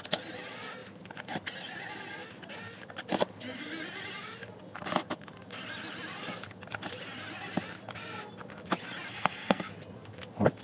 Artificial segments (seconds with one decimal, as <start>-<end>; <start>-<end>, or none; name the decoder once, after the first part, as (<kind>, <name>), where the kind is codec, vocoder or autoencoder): 9.1-9.7 (codec, SNAC)